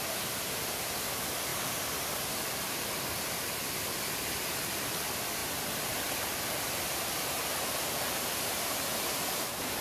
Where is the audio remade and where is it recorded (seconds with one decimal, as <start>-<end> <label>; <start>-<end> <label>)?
0.0-1.5 recorded; 1.5-5.0 remade; 5.0-5.4 recorded; 5.4-8.8 remade; 8.8-9.8 recorded